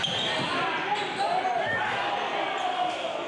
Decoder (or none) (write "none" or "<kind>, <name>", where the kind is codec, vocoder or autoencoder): none